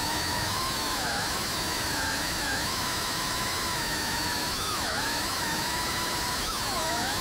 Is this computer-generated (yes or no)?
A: yes